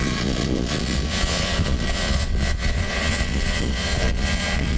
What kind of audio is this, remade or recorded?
remade